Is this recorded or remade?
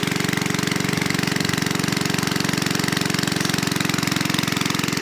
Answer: recorded